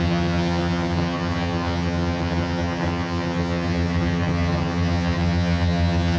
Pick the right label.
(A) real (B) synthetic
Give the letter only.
B